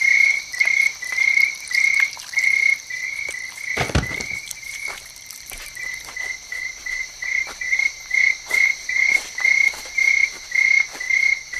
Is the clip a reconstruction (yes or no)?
yes